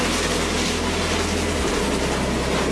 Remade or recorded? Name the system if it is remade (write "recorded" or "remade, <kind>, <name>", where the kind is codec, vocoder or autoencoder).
recorded